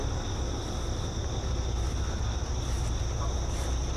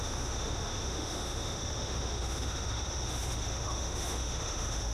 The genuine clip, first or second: first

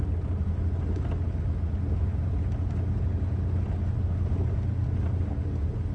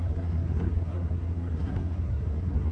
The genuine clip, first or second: first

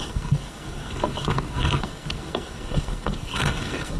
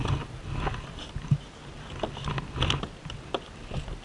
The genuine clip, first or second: second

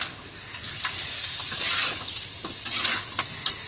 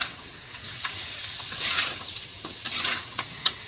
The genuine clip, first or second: first